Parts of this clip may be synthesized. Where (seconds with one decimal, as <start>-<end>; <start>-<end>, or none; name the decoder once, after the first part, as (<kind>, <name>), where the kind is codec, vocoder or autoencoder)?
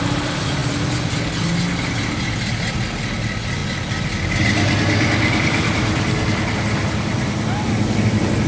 none